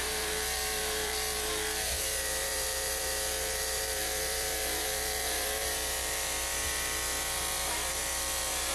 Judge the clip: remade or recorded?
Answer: remade